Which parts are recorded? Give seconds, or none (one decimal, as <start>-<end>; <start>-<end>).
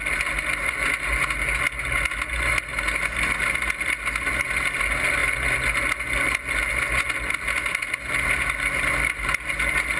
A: 0.0-10.0